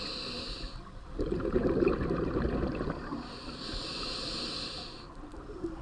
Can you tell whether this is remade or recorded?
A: recorded